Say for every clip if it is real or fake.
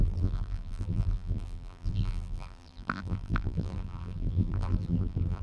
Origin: fake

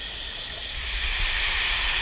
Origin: real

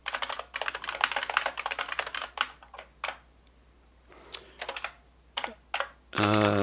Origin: real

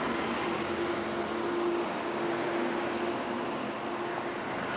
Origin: real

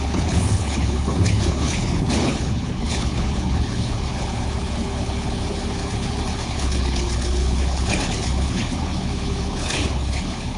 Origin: fake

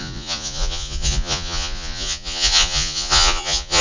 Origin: fake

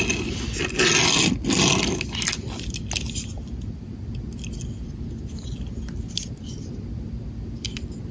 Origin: real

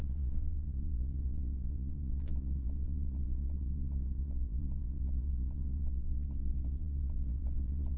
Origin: fake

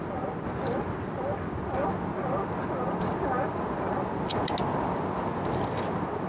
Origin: real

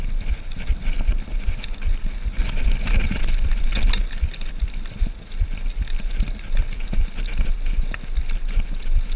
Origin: real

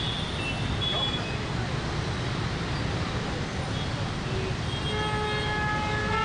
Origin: real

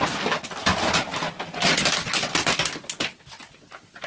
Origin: real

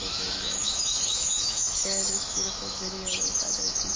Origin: fake